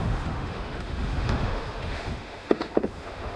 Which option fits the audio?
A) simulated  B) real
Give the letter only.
A